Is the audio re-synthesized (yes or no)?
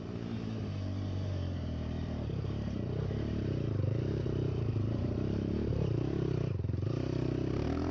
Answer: yes